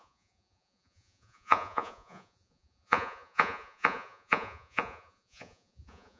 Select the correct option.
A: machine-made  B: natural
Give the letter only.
A